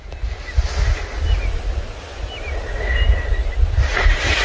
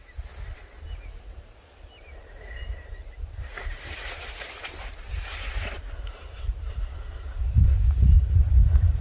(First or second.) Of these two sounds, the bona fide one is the first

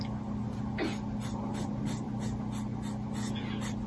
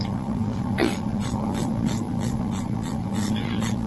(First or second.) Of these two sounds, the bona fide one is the first